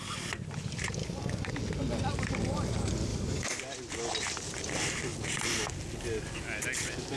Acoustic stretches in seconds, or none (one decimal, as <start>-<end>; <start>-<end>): 0.0-1.0; 1.5-3.1; 3.6-7.2